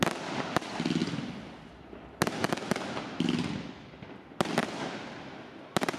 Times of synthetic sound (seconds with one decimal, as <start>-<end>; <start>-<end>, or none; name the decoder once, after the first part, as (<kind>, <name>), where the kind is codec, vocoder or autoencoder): none